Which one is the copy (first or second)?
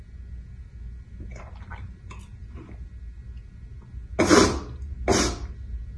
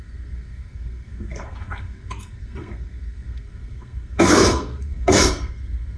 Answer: second